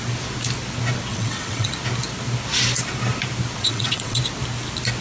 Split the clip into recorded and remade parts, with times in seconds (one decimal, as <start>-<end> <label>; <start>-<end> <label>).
0.0-1.1 recorded; 1.1-1.7 remade; 1.7-3.6 recorded; 3.6-4.2 remade; 4.2-5.0 recorded